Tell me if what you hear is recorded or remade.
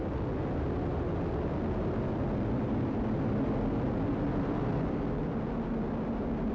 recorded